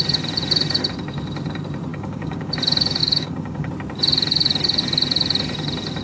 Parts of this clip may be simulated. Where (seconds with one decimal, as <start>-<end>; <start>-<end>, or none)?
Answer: 1.9-2.5; 3.0-3.7